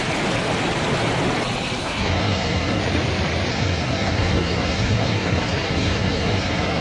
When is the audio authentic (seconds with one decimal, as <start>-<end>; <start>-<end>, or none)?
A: 0.0-1.8; 2.8-3.5